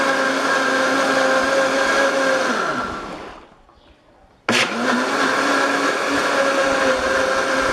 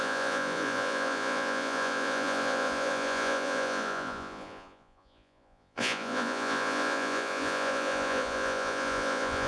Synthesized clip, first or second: second